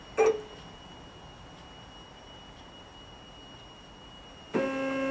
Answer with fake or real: real